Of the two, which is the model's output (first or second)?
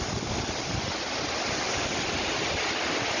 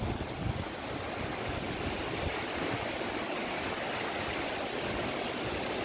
second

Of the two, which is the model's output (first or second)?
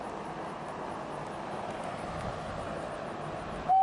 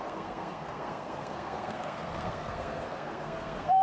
second